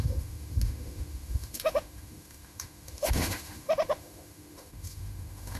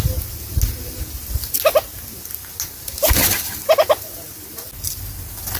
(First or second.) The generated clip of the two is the first